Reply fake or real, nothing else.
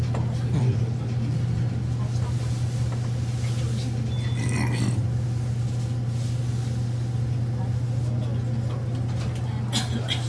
real